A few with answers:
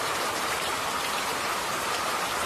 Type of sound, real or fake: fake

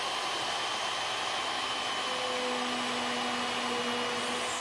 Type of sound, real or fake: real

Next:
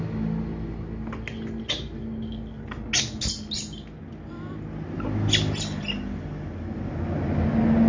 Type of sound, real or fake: real